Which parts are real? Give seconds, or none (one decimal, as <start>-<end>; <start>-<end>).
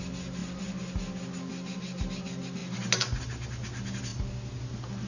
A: 0.0-5.1